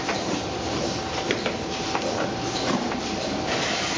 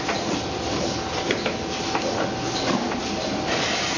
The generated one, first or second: first